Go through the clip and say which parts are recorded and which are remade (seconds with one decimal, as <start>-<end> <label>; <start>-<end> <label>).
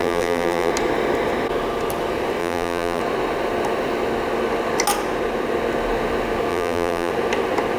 0.0-0.7 remade; 0.7-2.4 recorded; 2.4-3.0 remade; 3.0-6.5 recorded; 6.5-7.1 remade; 7.1-7.8 recorded